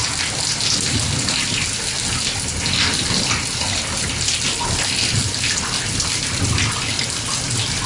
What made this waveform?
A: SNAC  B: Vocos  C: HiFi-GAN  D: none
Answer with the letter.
D